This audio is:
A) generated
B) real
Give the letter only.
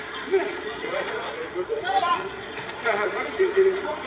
A